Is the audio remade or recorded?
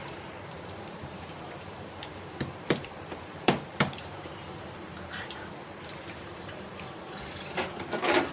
remade